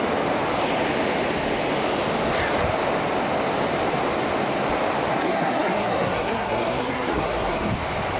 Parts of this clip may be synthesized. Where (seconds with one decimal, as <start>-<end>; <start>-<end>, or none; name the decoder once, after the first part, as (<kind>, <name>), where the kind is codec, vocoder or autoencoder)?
5.1-7.7 (codec, SNAC)